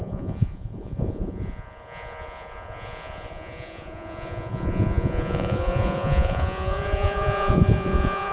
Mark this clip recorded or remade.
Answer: remade